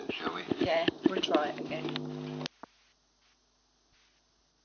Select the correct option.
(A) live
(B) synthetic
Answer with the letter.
A